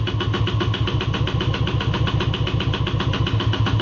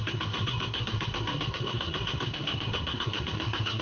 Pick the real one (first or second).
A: first